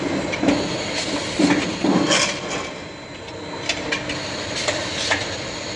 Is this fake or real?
real